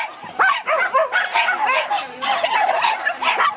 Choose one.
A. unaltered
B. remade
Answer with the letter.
A